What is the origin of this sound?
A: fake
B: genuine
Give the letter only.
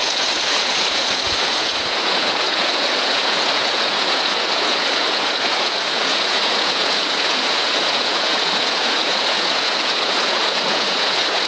A